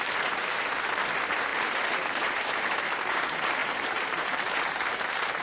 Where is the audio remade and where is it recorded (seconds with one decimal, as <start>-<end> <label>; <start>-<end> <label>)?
0.0-5.4 remade